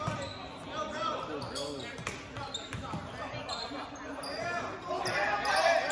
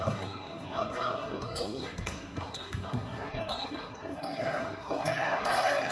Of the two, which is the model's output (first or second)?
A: second